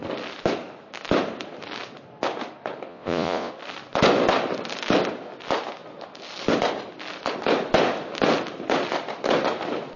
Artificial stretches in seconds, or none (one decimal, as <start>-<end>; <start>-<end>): 2.9-3.5